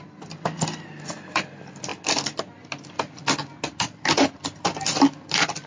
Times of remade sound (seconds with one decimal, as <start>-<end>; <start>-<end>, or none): none